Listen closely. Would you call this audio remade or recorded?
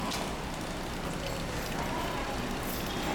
recorded